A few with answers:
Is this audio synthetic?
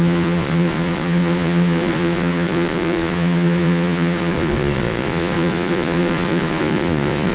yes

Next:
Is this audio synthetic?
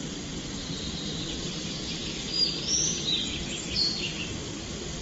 no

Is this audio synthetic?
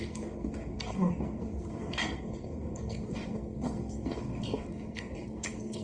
yes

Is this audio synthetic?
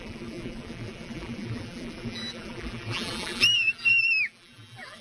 yes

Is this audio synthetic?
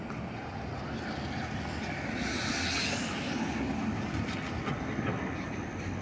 no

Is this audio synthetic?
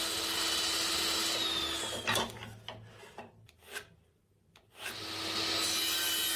no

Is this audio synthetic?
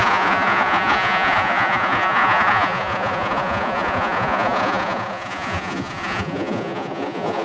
yes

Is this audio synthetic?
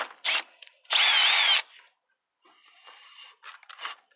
no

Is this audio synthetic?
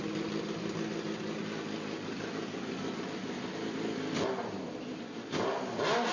no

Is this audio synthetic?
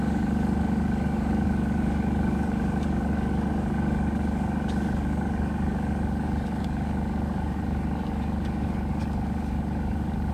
yes